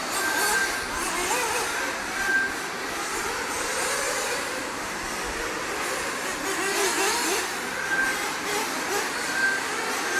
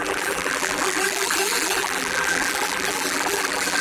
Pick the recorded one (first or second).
first